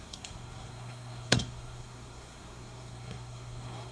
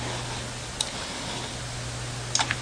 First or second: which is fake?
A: first